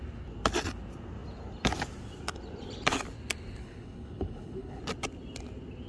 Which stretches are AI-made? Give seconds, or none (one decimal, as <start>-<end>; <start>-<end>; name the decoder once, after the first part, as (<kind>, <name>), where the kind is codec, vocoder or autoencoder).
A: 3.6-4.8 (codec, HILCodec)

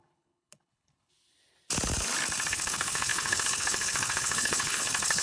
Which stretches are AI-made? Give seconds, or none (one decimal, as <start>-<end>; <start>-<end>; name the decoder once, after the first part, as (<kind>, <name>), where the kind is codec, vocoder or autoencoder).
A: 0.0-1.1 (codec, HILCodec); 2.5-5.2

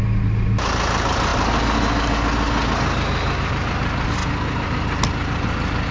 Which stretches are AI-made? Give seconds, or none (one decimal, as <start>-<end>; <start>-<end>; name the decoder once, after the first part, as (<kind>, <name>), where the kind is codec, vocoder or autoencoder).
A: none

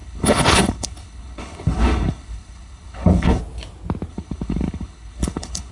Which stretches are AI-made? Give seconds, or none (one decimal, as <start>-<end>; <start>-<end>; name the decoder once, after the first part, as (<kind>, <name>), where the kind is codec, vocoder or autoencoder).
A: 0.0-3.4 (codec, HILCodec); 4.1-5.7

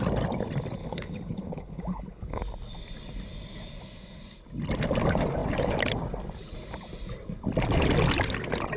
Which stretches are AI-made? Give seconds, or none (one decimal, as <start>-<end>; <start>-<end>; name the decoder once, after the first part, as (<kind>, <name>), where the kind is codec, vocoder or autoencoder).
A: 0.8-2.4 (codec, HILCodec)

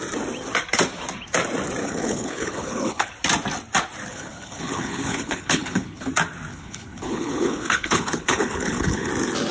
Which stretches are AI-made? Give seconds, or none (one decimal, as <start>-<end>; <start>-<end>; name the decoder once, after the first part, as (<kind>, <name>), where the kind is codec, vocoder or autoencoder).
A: 1.8-3.1 (codec, HILCodec); 4.1-6.1; 6.5-9.1

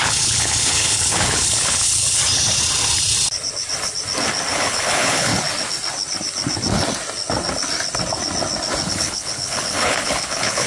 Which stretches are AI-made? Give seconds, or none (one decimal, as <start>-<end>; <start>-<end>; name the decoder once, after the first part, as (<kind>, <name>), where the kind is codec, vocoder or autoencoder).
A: 0.0-2.2 (codec, HILCodec); 4.5-5.3; 8.9-10.7

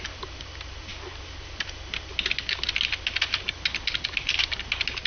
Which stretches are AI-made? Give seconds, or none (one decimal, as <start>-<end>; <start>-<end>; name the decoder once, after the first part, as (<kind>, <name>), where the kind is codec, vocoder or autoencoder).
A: none